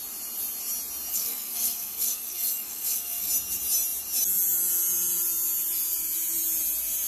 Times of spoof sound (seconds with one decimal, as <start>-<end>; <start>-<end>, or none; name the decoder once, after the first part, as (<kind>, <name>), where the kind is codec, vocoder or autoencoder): 1.1-3.3 (codec, SNAC)